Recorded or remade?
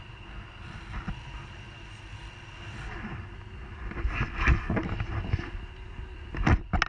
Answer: recorded